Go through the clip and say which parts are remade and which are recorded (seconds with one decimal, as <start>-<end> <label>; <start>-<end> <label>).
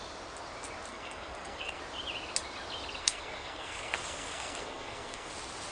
0.0-0.9 recorded; 0.9-1.8 remade; 1.8-3.0 recorded; 3.0-5.3 remade; 5.3-5.7 recorded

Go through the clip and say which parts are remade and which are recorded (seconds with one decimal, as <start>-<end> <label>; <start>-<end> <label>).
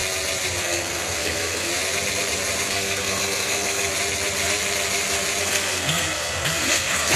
0.0-0.6 recorded; 0.6-1.7 remade; 1.7-2.7 recorded; 2.7-3.9 remade; 3.9-5.4 recorded; 5.4-7.2 remade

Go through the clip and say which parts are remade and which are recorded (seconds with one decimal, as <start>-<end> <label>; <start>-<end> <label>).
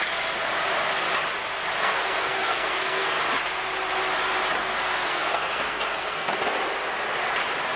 0.0-1.8 recorded; 1.8-3.2 remade; 3.2-4.6 recorded; 4.6-6.6 remade; 6.6-7.8 recorded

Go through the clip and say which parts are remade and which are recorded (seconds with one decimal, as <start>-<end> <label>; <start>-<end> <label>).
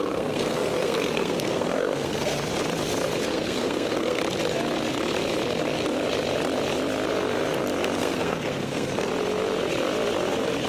0.0-2.3 remade; 2.3-3.2 recorded; 3.2-4.2 remade; 4.2-8.0 recorded; 8.0-9.1 remade; 9.1-10.7 recorded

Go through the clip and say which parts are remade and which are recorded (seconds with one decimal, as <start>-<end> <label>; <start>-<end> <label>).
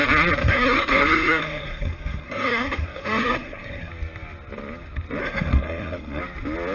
0.0-0.4 recorded; 0.4-3.9 remade; 3.9-5.2 recorded; 5.2-6.2 remade; 6.2-6.7 recorded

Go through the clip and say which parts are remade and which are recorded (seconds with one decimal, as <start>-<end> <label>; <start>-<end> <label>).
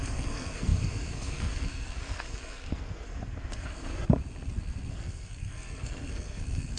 0.0-3.9 remade; 3.9-4.9 recorded; 4.9-6.8 remade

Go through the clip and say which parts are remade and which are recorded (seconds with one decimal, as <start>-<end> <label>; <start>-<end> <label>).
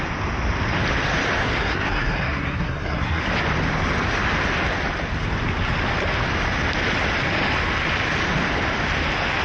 0.0-1.6 recorded; 1.6-3.2 remade; 3.2-9.4 recorded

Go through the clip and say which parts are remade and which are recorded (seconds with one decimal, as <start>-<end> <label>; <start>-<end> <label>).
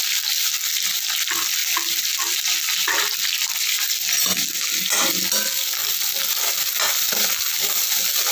0.0-8.3 recorded